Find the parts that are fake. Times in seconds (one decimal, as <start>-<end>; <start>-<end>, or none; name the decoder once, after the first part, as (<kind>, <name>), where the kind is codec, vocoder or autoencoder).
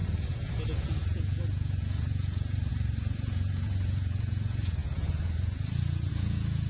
0.0-6.7 (vocoder, Vocos)